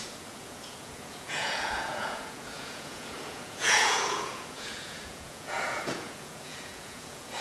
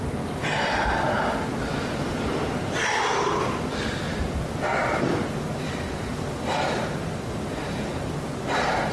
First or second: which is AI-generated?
first